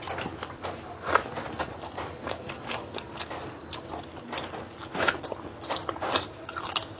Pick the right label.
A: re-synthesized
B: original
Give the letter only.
B